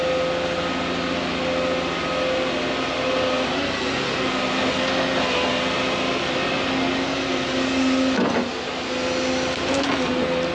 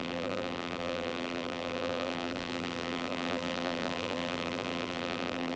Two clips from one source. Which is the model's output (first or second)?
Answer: second